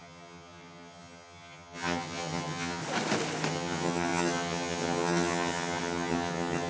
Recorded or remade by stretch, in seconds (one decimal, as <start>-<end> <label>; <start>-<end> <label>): 0.0-2.8 remade; 2.8-3.5 recorded; 3.5-6.7 remade